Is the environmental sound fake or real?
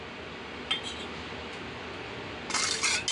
real